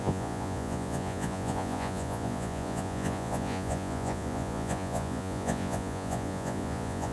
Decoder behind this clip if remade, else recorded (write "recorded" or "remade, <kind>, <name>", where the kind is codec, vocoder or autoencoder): remade, vocoder, Vocos